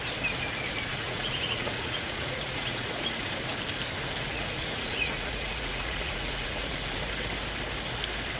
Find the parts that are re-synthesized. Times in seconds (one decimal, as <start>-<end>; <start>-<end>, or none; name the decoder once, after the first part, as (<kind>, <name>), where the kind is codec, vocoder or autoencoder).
0.9-3.3 (vocoder, Vocos); 4.3-7.1

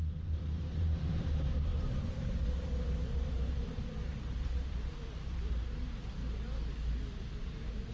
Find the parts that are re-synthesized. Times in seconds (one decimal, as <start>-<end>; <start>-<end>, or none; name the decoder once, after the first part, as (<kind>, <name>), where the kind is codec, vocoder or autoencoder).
0.0-6.2 (vocoder, BigVGAN v2); 7.1-7.9